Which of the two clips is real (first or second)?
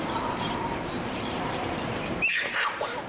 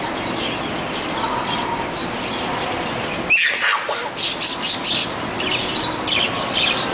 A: second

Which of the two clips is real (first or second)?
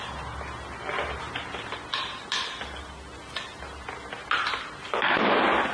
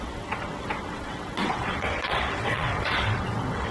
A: first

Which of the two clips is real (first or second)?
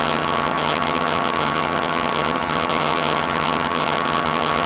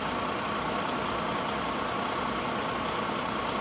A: second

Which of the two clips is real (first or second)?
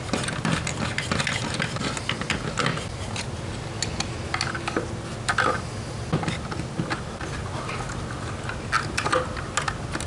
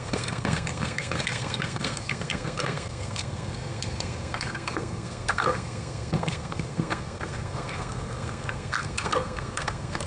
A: first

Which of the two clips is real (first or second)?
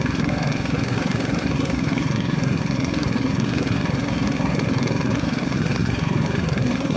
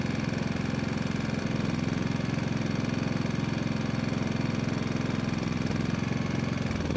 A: second